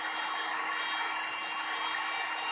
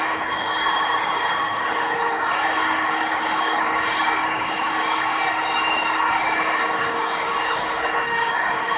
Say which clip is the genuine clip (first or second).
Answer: first